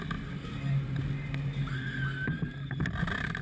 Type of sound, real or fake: real